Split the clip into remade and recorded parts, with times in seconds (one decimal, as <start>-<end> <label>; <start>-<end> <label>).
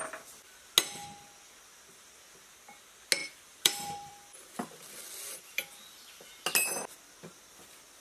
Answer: 0.0-3.2 recorded; 3.2-6.3 remade; 6.3-8.0 recorded